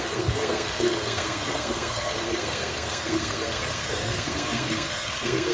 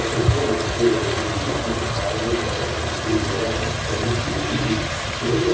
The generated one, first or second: first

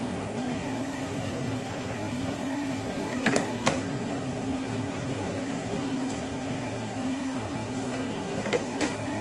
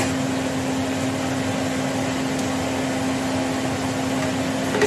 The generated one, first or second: first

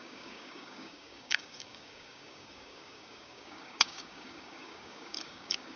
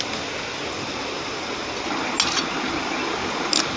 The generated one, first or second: first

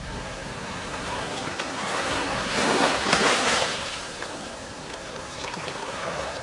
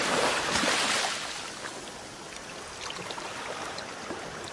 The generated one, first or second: first